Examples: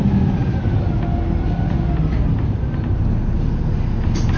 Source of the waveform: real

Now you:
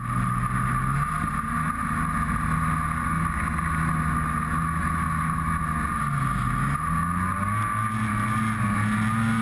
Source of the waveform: real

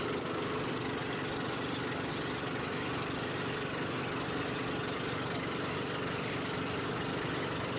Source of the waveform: real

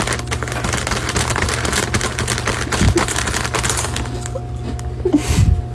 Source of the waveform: real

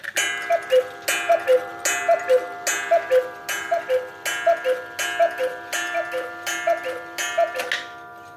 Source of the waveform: real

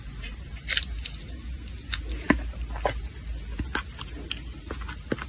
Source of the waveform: real